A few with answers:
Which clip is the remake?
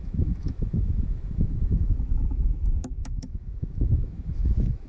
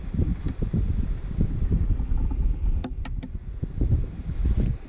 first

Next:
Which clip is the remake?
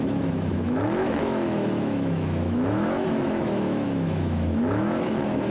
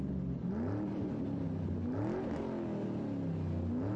first